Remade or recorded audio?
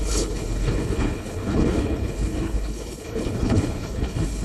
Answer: remade